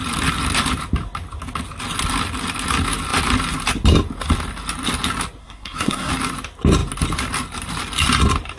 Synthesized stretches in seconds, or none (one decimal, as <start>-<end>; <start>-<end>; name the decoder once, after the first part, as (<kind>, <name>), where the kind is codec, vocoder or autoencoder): 5.4-6.1 (codec, SNAC)